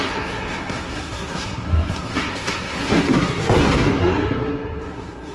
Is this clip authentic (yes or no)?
no